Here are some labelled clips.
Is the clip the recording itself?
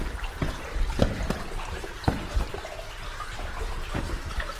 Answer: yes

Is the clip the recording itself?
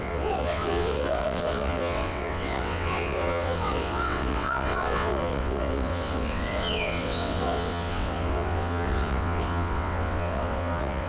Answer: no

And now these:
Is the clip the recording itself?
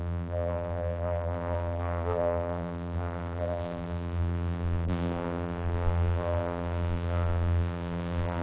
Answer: no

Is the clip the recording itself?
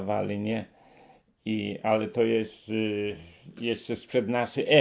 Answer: yes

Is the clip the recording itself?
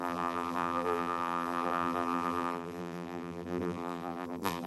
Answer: no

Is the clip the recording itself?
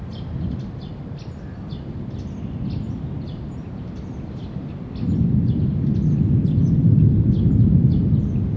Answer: yes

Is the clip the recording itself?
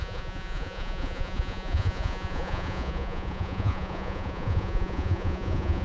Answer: no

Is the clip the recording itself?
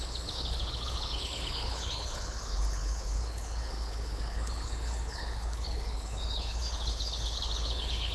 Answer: no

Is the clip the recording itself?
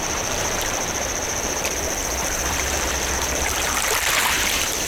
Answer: no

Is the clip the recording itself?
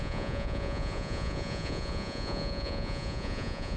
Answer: no